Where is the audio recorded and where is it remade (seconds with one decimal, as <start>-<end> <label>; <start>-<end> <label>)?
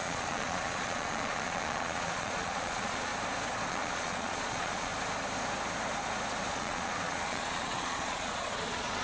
0.0-3.1 remade; 3.1-3.7 recorded; 3.7-4.9 remade; 4.9-6.5 recorded; 6.5-9.0 remade